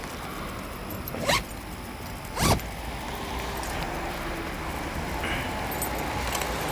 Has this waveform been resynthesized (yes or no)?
no